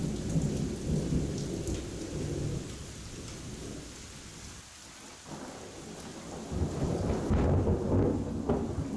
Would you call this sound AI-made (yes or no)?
no